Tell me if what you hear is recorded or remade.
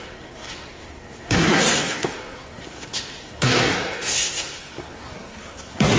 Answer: remade